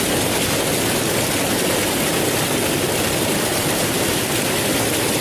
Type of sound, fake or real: real